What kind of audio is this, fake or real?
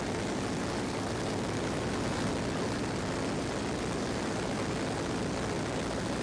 real